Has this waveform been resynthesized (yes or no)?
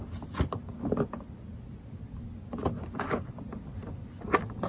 no